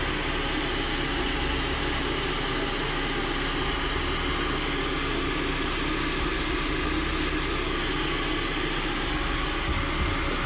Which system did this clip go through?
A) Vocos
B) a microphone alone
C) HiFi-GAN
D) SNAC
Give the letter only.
B